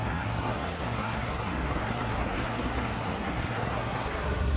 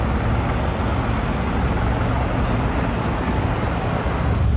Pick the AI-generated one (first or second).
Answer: first